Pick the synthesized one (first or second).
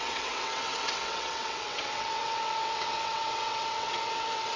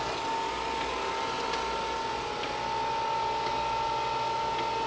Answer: first